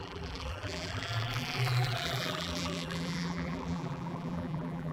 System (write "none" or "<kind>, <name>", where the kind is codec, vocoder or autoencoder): vocoder, BigVGAN v2